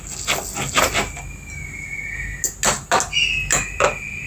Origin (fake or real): real